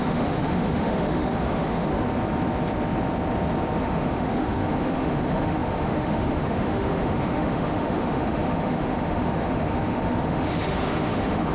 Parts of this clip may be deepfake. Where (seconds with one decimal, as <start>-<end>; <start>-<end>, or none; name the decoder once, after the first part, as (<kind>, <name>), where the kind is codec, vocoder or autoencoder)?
0.0-1.9 (autoencoder, DAC-VAE); 3.8-11.5